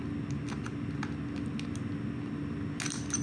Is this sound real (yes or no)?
yes